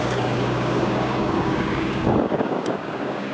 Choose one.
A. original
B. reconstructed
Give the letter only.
B